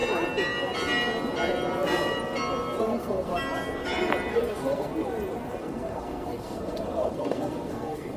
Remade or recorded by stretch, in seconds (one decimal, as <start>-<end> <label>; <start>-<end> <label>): 0.0-2.8 recorded; 2.8-3.3 remade; 3.3-4.3 recorded; 4.3-4.9 remade; 4.9-5.6 recorded; 5.6-8.2 remade